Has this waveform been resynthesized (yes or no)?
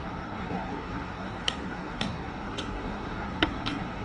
yes